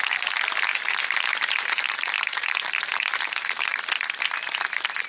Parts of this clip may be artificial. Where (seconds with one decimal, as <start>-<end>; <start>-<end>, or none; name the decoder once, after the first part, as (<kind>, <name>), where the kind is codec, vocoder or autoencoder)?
0.7-3.8 (vocoder, BigVGAN v2)